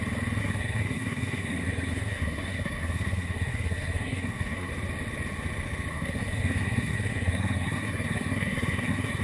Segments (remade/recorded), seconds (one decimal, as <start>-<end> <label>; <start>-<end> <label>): 0.0-0.4 recorded; 0.4-4.7 remade; 4.7-5.9 recorded; 5.9-9.2 remade